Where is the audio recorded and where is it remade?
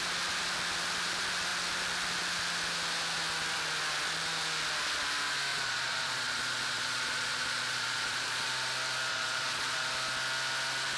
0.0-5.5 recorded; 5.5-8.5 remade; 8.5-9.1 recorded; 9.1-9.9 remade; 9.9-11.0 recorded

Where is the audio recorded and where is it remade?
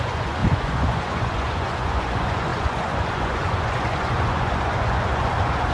0.0-5.7 remade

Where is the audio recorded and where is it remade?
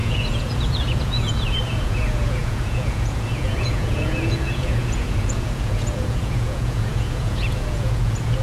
0.0-8.4 remade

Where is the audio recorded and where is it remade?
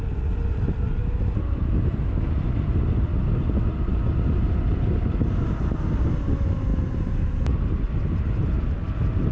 0.0-9.3 recorded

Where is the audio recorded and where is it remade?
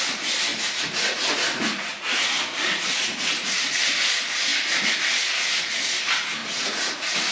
0.0-0.5 recorded; 0.5-3.7 remade; 3.7-6.4 recorded; 6.4-7.3 remade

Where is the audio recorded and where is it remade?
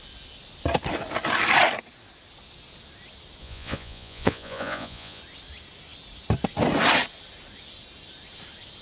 0.0-3.4 recorded; 3.4-5.2 remade; 5.2-8.8 recorded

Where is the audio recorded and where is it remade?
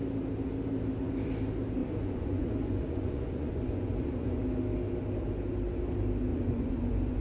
0.0-1.8 recorded; 1.8-4.4 remade; 4.4-6.3 recorded; 6.3-7.2 remade